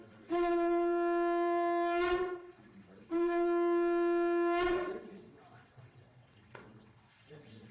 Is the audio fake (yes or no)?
yes